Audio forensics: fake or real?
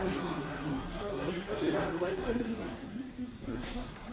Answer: fake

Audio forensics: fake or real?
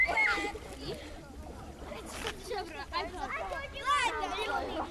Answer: real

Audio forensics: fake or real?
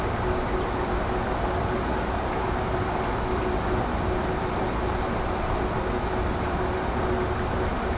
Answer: real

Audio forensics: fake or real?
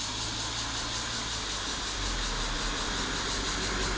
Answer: real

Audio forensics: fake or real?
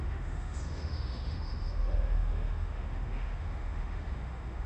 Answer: fake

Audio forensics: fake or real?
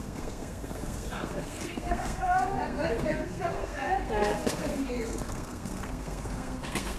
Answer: fake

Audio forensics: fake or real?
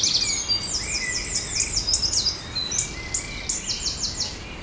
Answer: real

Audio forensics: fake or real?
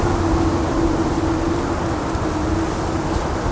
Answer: real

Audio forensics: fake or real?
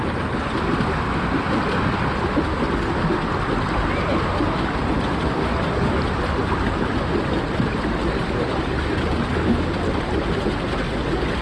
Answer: real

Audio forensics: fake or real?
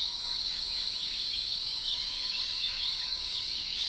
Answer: fake